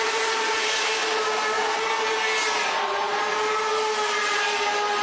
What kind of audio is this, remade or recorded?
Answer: recorded